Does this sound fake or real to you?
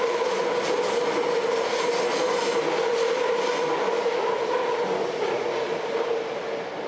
real